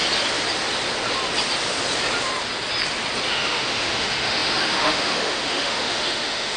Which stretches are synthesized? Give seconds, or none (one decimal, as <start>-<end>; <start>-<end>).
3.3-6.6